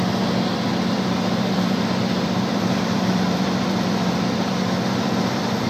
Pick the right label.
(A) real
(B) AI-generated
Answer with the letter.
B